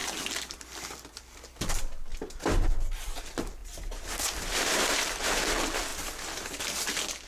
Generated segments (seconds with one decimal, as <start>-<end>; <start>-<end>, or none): 0.0-3.6; 4.7-5.9; 6.6-7.3